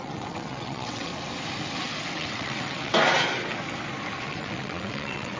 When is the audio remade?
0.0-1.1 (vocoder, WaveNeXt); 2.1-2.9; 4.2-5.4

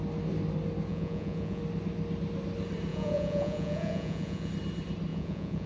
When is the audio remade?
0.9-1.6 (vocoder, Vocos); 2.9-4.5; 5.1-5.7